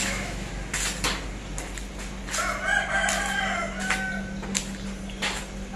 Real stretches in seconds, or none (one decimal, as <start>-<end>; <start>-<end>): 0.5-5.8